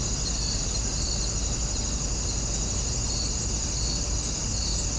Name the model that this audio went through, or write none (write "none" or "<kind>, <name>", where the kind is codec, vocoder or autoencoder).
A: none